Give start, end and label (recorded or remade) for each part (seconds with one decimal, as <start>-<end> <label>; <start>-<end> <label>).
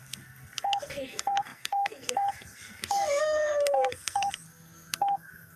0.0-5.6 remade